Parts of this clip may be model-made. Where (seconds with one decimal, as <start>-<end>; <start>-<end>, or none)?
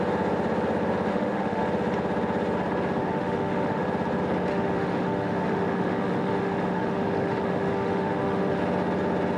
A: 1.1-1.6; 3.0-3.8; 4.5-8.6